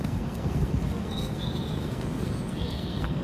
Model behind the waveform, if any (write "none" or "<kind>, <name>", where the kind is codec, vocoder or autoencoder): codec, SNAC